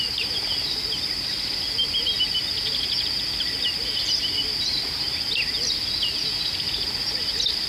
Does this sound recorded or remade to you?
recorded